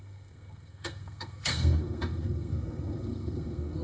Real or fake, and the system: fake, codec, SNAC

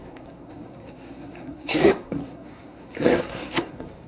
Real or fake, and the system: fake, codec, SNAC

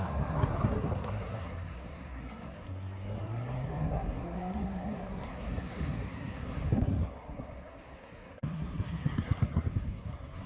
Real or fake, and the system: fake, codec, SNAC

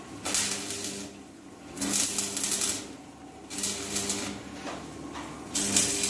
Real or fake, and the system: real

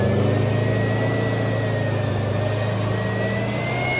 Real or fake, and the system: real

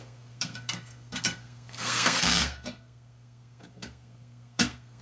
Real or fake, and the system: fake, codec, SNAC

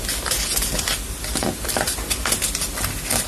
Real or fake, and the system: real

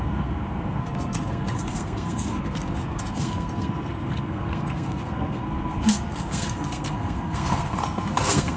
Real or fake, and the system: fake, codec, SNAC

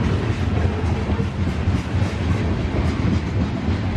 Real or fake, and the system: real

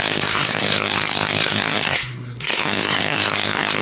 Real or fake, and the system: fake, codec, SNAC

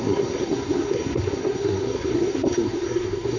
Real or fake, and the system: fake, codec, SNAC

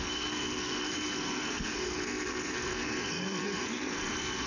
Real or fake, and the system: fake, codec, SNAC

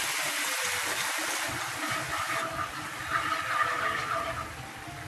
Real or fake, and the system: real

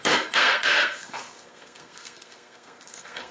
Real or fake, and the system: fake, codec, SNAC